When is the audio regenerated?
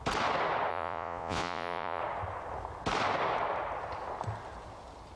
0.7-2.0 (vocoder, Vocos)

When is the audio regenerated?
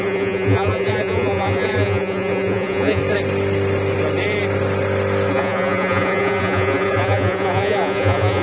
0.0-3.0 (vocoder, Vocos); 5.3-8.4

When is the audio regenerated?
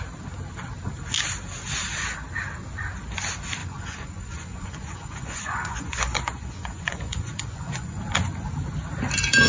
3.6-8.0 (vocoder, Vocos)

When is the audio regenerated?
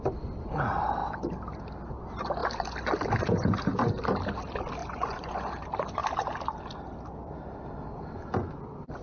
4.8-5.5 (vocoder, Vocos)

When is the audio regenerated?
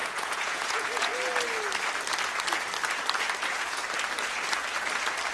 0.0-1.1 (vocoder, Vocos); 3.4-3.8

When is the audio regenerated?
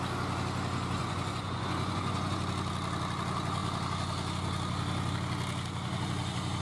1.0-2.4 (vocoder, Vocos)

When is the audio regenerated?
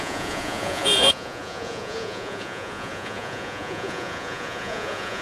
0.0-5.2 (vocoder, Vocos)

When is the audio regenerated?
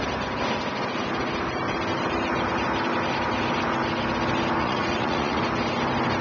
4.6-5.4 (vocoder, Vocos)